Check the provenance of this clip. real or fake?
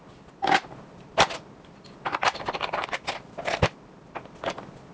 real